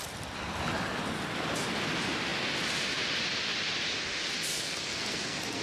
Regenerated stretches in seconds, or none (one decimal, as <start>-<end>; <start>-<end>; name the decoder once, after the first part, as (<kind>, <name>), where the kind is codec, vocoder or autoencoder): 4.5-5.6 (codec, SNAC)